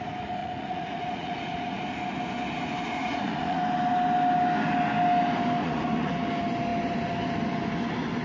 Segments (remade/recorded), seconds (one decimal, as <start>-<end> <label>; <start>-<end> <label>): 0.0-0.4 recorded; 0.4-1.8 remade; 1.8-3.0 recorded; 3.0-3.6 remade; 3.6-5.6 recorded; 5.6-6.1 remade; 6.1-8.2 recorded